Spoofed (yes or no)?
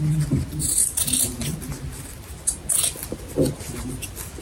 yes